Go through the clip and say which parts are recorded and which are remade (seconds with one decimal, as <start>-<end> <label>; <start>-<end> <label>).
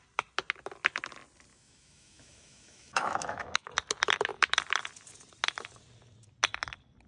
0.0-1.5 recorded; 1.5-3.7 remade; 3.7-7.1 recorded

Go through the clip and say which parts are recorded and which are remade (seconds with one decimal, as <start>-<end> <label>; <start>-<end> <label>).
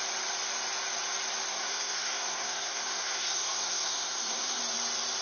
0.0-1.5 recorded; 1.5-4.6 remade; 4.6-5.2 recorded